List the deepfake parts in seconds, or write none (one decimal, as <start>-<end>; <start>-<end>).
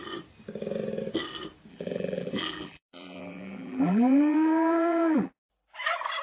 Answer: 1.7-5.4